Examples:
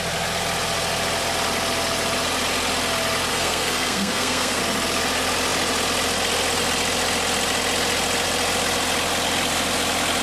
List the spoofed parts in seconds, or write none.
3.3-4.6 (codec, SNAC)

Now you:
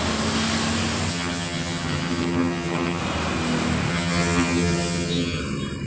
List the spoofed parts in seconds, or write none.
1.1-3.0 (vocoder, HiFi-GAN); 3.9-5.4

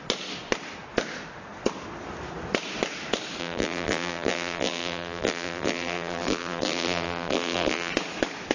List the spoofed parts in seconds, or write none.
3.4-7.9 (vocoder, BigVGAN v2)